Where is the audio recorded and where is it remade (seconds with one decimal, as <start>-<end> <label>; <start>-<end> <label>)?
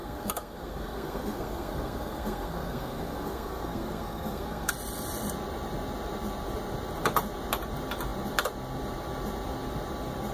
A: 0.0-4.7 remade; 4.7-10.3 recorded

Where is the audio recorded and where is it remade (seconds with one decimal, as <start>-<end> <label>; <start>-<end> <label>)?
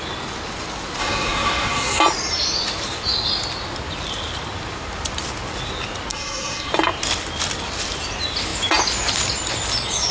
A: 0.0-1.0 recorded; 1.0-2.0 remade; 2.0-6.1 recorded; 6.1-6.7 remade; 6.7-10.1 recorded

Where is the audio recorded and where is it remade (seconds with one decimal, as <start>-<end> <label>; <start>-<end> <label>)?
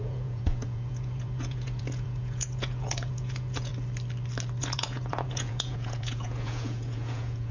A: 0.0-3.7 remade; 3.7-4.6 recorded; 4.6-7.5 remade